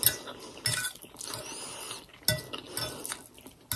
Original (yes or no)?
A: yes